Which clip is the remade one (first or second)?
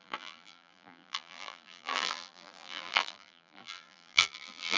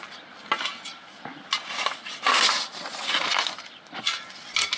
first